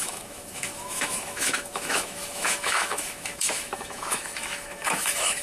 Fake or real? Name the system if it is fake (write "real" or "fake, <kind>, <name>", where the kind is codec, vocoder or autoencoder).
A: fake, autoencoder, DAC-VAE